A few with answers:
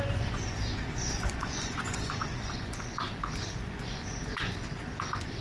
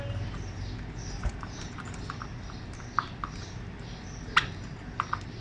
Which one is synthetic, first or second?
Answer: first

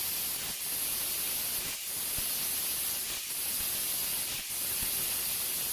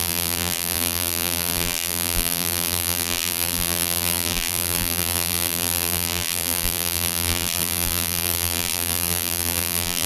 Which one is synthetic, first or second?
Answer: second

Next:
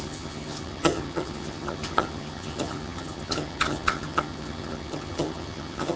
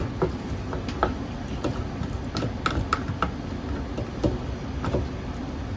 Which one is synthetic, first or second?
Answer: first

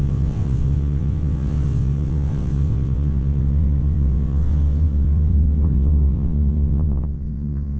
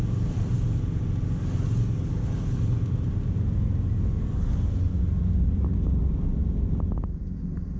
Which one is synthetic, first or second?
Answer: first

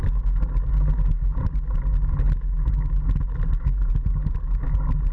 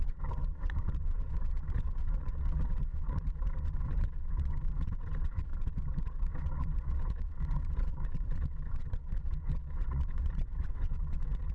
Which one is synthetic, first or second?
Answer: second